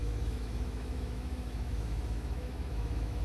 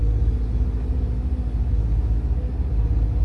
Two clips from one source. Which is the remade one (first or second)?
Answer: first